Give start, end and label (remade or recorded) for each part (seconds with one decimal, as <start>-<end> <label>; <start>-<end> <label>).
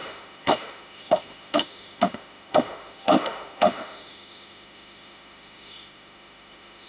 0.0-6.9 remade